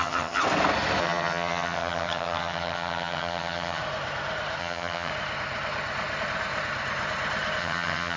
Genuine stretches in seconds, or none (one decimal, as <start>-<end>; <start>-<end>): 0.4-1.0; 3.8-4.6; 5.1-7.6